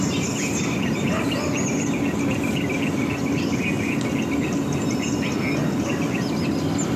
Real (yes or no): yes